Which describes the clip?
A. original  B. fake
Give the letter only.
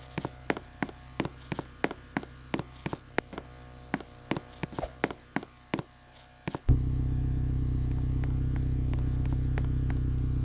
A